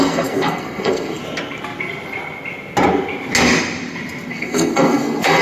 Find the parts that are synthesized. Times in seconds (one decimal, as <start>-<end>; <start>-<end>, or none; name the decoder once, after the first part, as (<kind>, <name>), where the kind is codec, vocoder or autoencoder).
0.0-1.2 (codec, SNAC); 4.3-5.4